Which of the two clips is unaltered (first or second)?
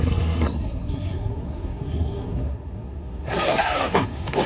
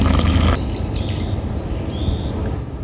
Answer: second